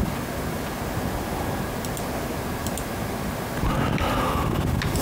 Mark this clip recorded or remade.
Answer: recorded